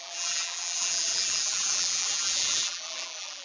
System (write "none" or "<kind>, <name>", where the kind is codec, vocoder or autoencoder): vocoder, BigVGAN v2